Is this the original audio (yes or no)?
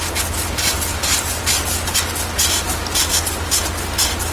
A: yes